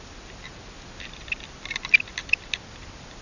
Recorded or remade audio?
recorded